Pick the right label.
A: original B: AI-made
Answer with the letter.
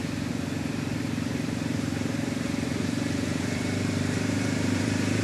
B